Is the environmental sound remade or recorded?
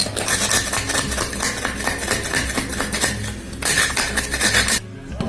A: recorded